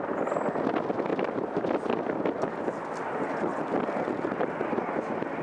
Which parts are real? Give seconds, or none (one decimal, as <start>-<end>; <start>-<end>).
0.0-1.1; 1.6-5.4